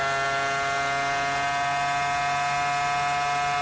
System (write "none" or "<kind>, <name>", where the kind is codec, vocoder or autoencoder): none